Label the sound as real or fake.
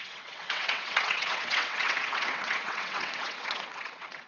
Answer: fake